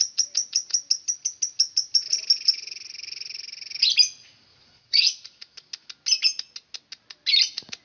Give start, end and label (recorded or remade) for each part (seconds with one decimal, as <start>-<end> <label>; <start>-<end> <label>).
0.0-4.5 recorded; 4.5-5.0 remade; 5.0-7.8 recorded